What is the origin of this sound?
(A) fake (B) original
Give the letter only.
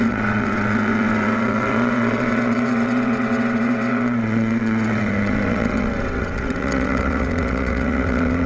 A